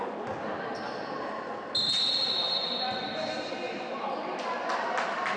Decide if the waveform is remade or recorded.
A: recorded